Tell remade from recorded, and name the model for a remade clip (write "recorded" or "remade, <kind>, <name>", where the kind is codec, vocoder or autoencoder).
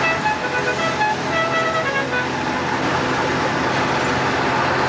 recorded